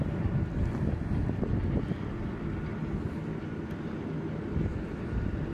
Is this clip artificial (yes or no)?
no